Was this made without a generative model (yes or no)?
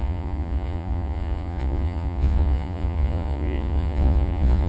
no